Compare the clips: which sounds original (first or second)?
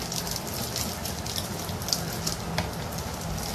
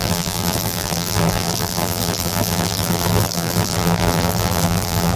first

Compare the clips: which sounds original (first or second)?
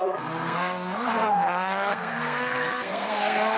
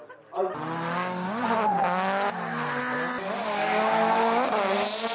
second